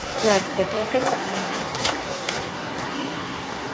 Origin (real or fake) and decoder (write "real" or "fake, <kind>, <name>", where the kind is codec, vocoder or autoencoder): fake, codec, SNAC